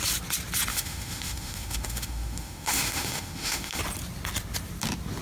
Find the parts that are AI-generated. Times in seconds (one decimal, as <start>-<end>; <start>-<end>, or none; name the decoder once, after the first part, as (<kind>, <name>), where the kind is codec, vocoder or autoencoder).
0.7-3.8 (autoencoder, DAC-VAE)